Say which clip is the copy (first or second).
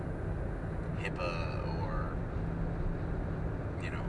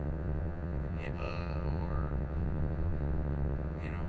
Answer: second